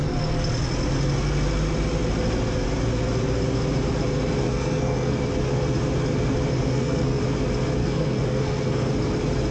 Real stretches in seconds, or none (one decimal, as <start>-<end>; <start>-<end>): 0.0-4.4; 5.1-6.5; 7.2-7.8; 8.9-9.5